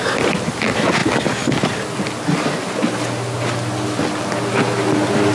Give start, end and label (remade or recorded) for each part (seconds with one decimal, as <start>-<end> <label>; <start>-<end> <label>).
0.0-5.3 recorded